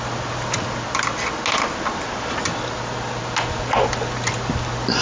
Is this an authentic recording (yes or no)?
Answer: yes